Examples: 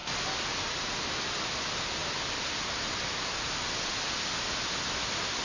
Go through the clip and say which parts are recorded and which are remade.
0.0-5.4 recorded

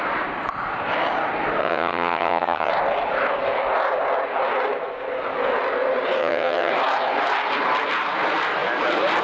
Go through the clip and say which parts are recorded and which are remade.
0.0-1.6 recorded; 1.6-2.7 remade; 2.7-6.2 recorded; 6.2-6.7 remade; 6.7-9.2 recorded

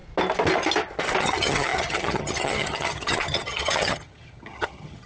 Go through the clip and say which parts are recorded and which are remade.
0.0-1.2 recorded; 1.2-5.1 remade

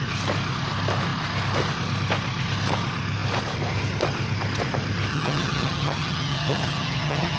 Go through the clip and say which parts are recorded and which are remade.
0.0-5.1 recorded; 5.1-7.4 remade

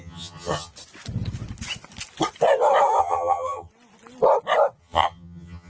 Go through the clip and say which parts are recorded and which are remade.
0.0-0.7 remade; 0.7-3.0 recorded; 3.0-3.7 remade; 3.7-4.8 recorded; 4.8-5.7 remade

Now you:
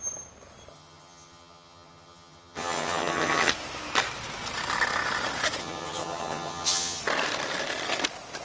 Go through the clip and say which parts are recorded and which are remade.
0.0-0.7 recorded; 0.7-3.5 remade; 3.5-5.6 recorded; 5.6-7.0 remade; 7.0-8.4 recorded

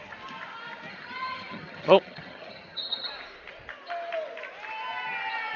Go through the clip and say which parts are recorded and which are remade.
0.0-0.9 recorded; 0.9-3.1 remade; 3.1-5.6 recorded

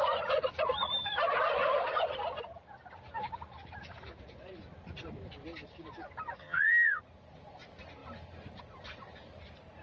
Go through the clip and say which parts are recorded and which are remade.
0.0-6.4 recorded; 6.4-7.0 remade; 7.0-9.8 recorded